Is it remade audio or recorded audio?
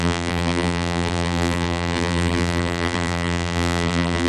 remade